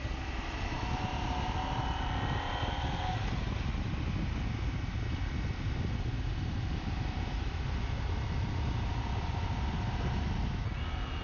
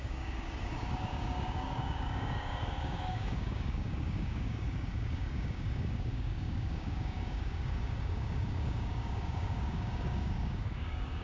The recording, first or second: first